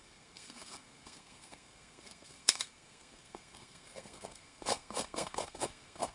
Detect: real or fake fake